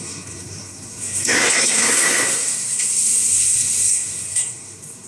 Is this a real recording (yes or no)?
no